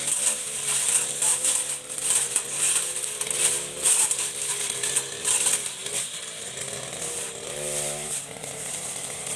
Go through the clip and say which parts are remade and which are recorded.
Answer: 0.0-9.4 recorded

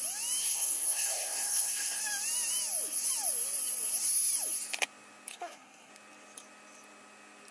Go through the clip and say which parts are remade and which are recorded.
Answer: 0.0-0.4 recorded; 0.4-2.0 remade; 2.0-5.3 recorded; 5.3-5.9 remade; 5.9-7.5 recorded

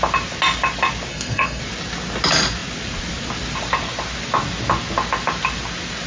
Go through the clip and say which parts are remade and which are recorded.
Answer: 0.0-1.1 recorded; 1.1-1.6 remade; 1.6-6.1 recorded

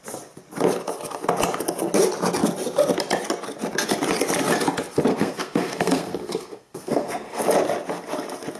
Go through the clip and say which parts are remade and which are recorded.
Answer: 0.0-5.1 recorded; 5.1-7.4 remade; 7.4-8.6 recorded

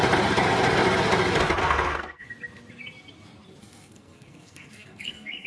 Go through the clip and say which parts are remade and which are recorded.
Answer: 0.0-1.6 recorded; 1.6-2.3 remade; 2.3-3.6 recorded; 3.6-5.5 remade

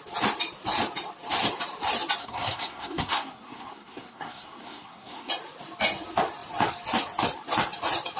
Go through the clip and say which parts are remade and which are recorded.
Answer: 0.0-2.2 recorded; 2.2-5.3 remade; 5.3-8.2 recorded